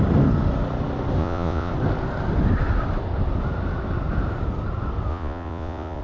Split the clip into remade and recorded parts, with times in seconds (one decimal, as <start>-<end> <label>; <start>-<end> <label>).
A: 0.0-1.2 recorded; 1.2-1.7 remade; 1.7-5.1 recorded; 5.1-6.0 remade